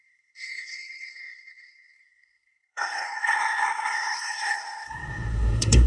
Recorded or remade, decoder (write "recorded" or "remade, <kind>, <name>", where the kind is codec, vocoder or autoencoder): remade, codec, SNAC